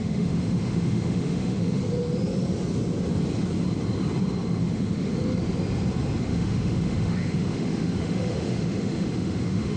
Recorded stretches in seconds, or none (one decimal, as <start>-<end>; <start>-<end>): 1.8-4.6; 5.1-6.2